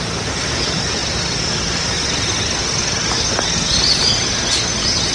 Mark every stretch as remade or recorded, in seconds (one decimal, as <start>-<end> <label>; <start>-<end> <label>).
0.0-5.1 recorded